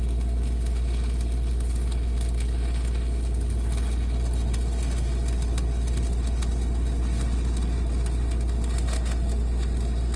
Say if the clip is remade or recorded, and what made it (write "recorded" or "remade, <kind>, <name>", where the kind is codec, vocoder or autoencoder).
recorded